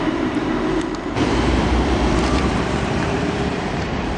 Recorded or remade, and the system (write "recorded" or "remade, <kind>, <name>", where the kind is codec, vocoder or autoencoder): remade, vocoder, BigVGAN v2